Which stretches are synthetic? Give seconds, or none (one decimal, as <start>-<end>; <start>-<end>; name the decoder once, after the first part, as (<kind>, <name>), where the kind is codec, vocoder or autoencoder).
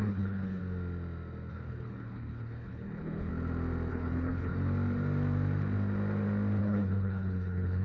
0.0-0.6 (codec, HILCodec); 1.5-3.3; 3.9-4.5; 6.6-7.8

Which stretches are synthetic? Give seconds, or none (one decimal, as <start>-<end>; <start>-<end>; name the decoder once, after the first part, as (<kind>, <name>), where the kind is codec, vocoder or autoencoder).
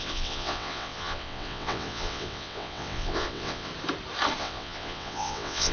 0.0-3.7 (vocoder, WaveNeXt); 4.4-5.7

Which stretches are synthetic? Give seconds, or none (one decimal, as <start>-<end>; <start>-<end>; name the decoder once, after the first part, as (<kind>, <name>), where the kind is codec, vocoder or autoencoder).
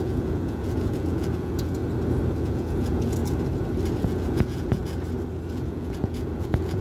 0.0-1.8 (vocoder, Vocos); 2.4-3.2; 4.0-4.8; 5.5-6.8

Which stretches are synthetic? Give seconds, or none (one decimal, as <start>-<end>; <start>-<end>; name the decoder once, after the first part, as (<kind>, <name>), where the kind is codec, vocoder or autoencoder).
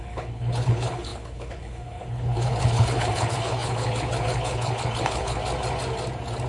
0.0-5.4 (codec, HILCodec)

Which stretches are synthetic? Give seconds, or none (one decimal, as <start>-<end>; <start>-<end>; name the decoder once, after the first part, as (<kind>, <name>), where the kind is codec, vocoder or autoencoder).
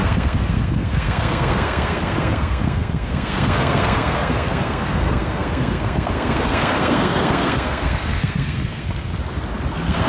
0.0-9.1 (codec, SNAC); 9.7-10.1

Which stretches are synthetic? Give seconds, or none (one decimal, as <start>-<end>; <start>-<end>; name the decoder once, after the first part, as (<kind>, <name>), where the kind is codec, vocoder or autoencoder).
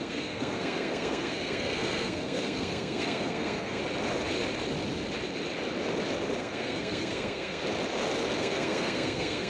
0.0-3.8 (codec, SNAC); 6.4-7.6; 8.4-9.5